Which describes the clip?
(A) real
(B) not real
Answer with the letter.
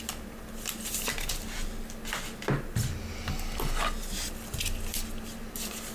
A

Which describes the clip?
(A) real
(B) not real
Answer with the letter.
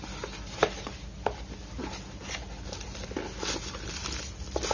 A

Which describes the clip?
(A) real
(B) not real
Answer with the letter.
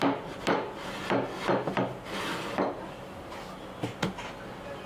A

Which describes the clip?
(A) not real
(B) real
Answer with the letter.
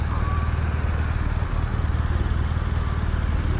B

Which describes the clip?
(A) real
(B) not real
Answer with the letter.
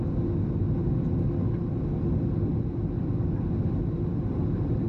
A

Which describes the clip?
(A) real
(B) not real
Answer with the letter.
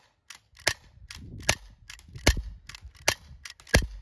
A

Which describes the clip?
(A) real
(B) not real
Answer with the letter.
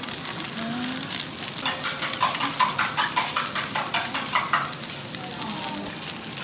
A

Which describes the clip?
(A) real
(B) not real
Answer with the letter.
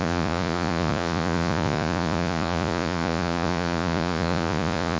B